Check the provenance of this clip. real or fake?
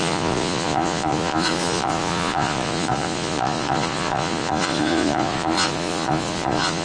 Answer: fake